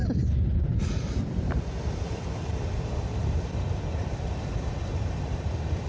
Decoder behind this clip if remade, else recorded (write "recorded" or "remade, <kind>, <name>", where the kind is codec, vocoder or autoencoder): remade, vocoder, BigVGAN v2